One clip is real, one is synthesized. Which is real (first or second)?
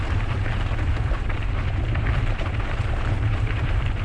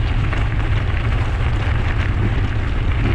second